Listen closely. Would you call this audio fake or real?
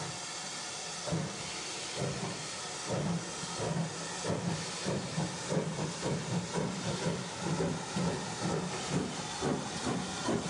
real